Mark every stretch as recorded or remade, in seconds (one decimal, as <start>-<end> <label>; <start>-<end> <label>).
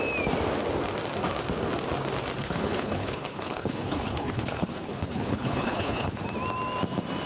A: 0.0-2.4 recorded; 2.4-6.2 remade; 6.2-7.3 recorded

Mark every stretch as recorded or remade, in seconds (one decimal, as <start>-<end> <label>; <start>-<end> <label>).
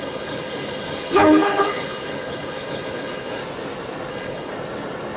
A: 0.0-3.4 remade; 3.4-4.1 recorded; 4.1-4.5 remade; 4.5-5.2 recorded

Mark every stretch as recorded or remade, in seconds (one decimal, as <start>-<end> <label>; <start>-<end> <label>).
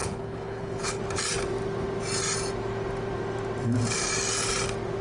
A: 0.0-1.0 remade; 1.0-5.0 recorded